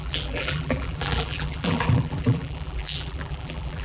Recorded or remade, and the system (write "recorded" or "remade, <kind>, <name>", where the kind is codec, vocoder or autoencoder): remade, vocoder, BigVGAN v2